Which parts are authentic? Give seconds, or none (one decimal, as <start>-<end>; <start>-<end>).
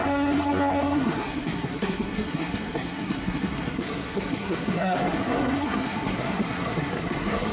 none